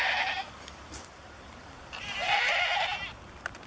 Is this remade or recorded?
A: recorded